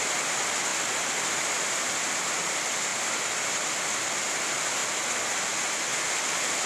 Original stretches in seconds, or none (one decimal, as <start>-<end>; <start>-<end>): 0.0-0.7; 2.5-6.7